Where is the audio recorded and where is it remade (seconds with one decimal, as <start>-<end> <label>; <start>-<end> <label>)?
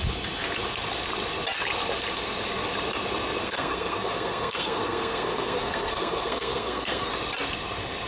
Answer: 0.0-3.4 recorded; 3.4-7.1 remade; 7.1-8.1 recorded